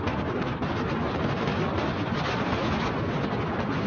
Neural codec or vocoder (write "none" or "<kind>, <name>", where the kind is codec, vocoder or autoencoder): none